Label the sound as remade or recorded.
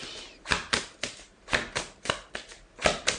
recorded